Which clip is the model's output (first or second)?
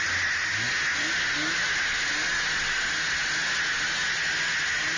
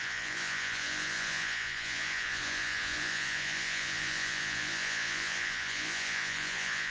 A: second